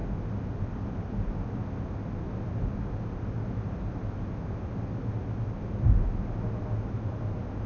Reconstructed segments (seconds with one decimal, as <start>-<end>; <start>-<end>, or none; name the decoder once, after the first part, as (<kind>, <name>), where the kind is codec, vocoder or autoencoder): none